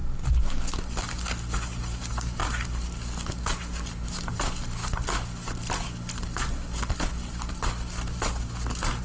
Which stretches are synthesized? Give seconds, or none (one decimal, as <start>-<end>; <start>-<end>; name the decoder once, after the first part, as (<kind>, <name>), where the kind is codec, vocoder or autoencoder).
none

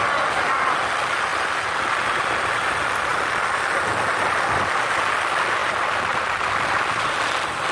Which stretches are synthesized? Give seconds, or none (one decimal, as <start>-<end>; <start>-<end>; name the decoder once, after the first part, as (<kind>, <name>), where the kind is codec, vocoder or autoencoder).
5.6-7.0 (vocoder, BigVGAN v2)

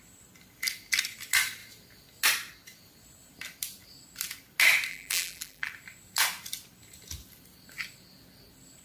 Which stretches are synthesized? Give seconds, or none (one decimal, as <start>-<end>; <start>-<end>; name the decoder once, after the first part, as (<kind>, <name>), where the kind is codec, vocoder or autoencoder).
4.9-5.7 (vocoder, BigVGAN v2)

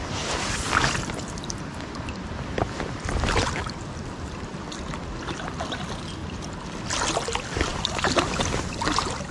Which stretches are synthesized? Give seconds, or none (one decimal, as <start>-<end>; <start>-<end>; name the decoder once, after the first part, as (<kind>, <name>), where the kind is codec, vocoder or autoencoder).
0.0-4.8 (vocoder, BigVGAN v2)

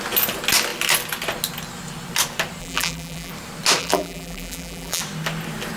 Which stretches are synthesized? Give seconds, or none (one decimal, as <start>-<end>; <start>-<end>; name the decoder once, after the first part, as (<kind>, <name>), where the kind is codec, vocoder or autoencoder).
2.6-3.3 (vocoder, BigVGAN v2); 3.8-5.0

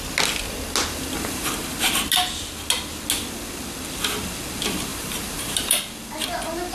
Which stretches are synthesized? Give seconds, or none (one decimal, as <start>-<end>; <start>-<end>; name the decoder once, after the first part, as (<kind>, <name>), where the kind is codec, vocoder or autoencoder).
4.9-5.8 (vocoder, BigVGAN v2)

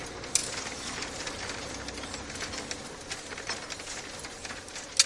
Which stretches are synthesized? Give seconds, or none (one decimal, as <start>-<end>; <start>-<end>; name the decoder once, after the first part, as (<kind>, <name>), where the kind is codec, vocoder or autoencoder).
0.4-1.7 (vocoder, BigVGAN v2); 2.1-2.6